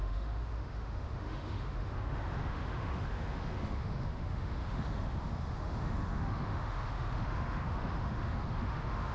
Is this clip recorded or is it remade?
remade